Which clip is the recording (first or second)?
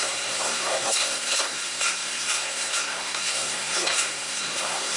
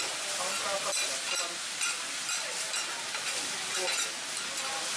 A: second